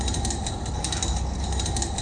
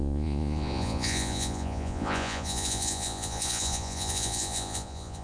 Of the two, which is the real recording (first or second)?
first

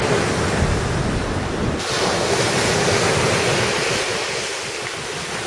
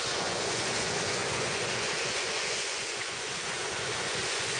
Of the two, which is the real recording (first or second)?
first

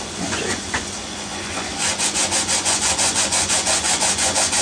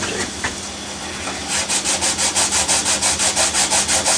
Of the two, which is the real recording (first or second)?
second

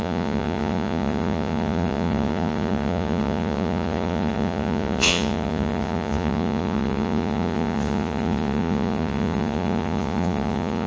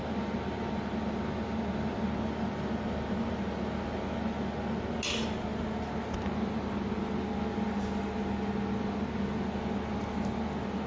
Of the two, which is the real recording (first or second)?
second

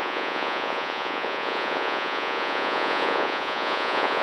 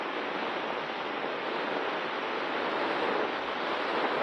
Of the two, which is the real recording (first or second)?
second